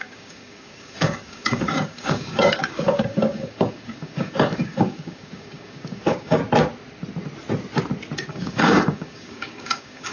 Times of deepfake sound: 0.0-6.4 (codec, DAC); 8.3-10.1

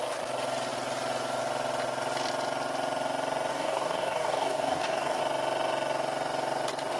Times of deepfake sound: 3.5-5.2 (codec, DAC)

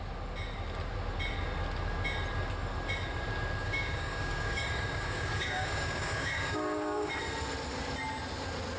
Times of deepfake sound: 3.6-7.1 (codec, DAC)

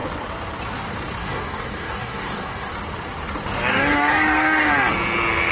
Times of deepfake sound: 1.2-2.7 (codec, DAC); 3.7-4.7

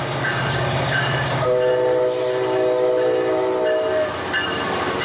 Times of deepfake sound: 0.0-1.7 (codec, DAC)